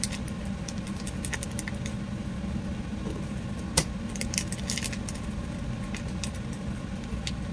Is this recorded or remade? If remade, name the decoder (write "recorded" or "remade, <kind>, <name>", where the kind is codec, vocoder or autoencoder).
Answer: recorded